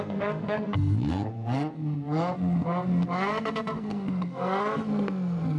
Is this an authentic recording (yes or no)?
no